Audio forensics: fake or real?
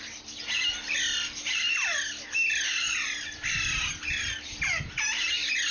real